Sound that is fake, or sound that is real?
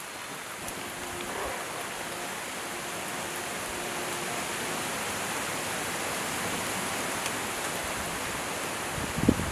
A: real